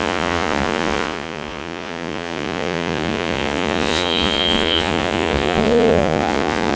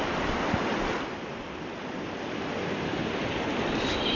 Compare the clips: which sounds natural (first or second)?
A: second